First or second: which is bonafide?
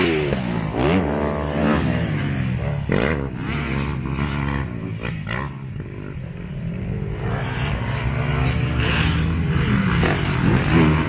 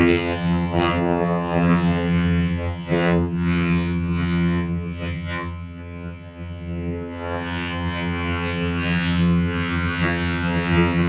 first